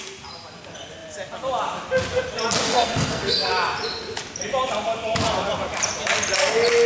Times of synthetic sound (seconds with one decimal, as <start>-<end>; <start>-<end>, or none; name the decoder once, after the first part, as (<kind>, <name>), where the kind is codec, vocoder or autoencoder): 2.7-3.5 (codec, SNAC)